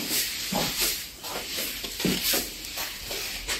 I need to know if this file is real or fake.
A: fake